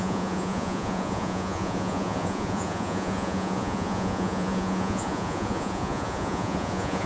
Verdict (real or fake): fake